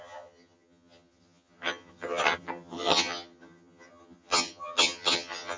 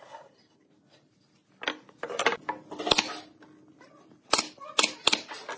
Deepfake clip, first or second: first